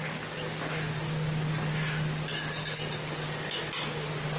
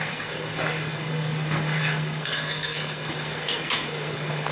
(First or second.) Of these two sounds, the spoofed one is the second